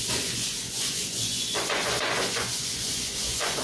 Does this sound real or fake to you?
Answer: fake